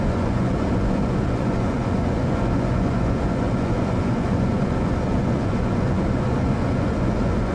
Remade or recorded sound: remade